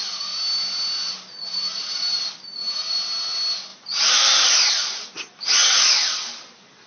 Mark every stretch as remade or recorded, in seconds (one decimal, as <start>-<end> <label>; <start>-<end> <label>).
0.0-1.5 recorded; 1.5-2.2 remade; 2.2-3.7 recorded; 3.7-4.7 remade; 4.7-6.9 recorded